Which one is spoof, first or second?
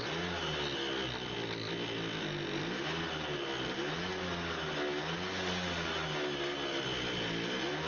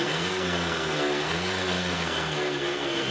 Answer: second